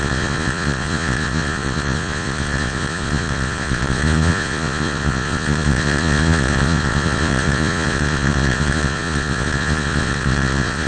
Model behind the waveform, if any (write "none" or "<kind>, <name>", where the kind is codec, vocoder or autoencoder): vocoder, Vocos